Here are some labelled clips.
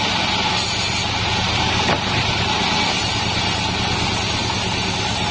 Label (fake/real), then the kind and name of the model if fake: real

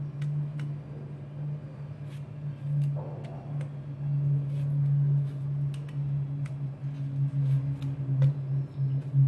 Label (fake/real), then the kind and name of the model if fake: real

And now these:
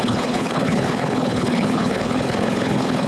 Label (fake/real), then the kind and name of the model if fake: fake, codec, HILCodec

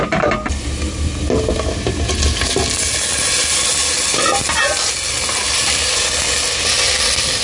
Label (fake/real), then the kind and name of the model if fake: real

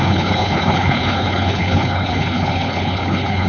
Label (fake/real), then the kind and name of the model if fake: fake, codec, HILCodec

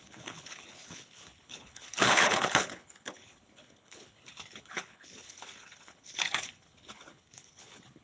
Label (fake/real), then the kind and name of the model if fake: fake, codec, HILCodec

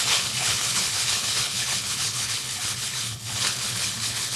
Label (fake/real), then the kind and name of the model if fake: fake, codec, HILCodec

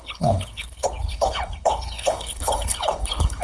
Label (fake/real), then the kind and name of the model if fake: fake, codec, HILCodec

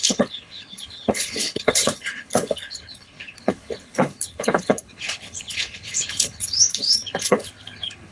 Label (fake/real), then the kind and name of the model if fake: fake, codec, HILCodec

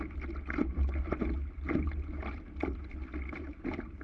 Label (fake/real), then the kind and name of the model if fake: real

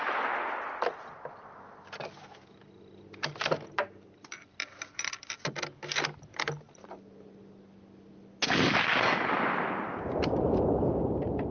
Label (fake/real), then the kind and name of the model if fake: real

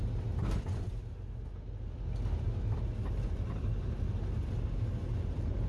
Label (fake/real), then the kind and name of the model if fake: real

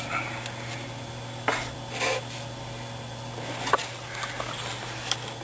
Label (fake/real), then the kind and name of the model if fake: real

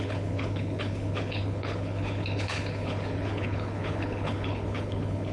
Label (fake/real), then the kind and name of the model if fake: fake, codec, HILCodec